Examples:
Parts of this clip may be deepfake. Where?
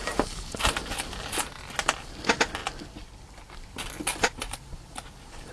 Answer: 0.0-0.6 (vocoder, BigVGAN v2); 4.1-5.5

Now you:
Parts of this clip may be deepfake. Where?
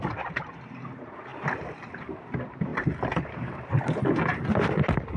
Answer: 1.3-2.2 (vocoder, BigVGAN v2)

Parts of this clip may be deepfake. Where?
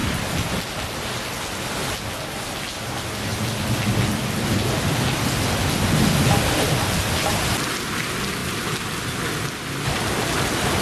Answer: 8.4-9.4 (vocoder, BigVGAN v2)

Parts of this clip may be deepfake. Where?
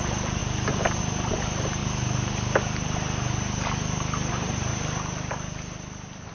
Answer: 0.0-0.4 (vocoder, BigVGAN v2); 1.0-1.8; 4.3-4.7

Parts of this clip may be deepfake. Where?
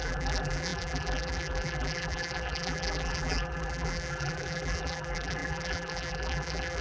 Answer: 0.0-6.8 (vocoder, BigVGAN v2)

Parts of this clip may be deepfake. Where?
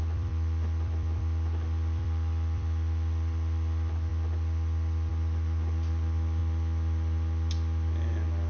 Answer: 0.0-6.4 (vocoder, BigVGAN v2)